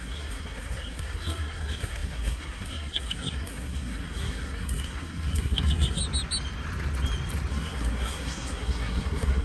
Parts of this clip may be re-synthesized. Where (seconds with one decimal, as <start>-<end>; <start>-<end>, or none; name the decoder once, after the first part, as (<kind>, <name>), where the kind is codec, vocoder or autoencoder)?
0.0-6.0 (codec, SNAC); 7.5-9.4